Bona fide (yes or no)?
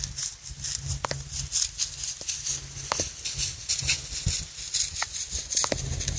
yes